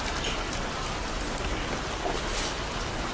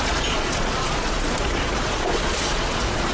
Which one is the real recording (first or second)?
first